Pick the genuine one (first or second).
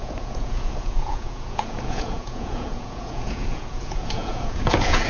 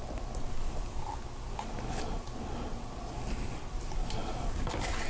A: second